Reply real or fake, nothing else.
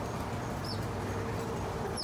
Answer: real